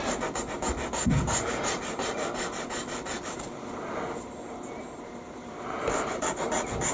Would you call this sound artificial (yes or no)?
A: no